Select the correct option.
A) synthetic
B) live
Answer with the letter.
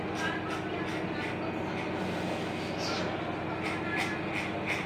B